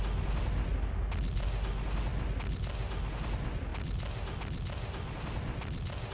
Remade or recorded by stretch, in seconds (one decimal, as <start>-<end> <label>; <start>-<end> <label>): 0.0-6.1 recorded